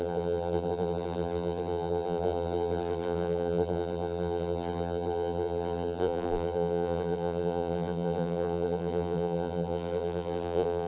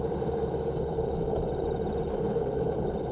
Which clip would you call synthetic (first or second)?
first